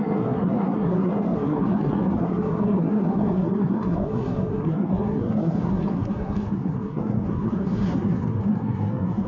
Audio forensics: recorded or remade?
remade